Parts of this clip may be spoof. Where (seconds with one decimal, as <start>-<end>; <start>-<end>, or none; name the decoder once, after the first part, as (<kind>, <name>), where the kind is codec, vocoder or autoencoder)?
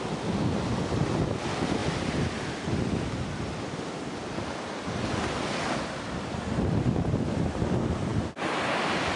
none